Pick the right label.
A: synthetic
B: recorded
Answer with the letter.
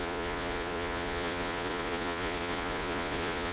A